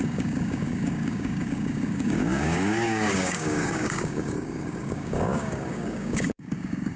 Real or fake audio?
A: fake